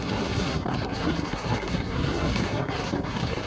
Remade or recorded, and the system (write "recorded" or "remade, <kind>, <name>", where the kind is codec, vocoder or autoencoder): remade, codec, SNAC